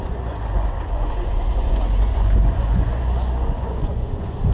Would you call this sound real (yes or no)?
no